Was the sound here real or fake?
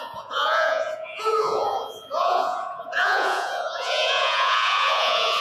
fake